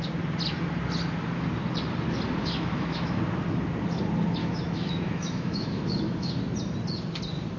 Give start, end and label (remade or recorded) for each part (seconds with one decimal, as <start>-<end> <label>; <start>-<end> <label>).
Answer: 0.0-2.4 recorded; 2.4-3.2 remade; 3.2-4.4 recorded; 4.4-6.3 remade; 6.3-7.6 recorded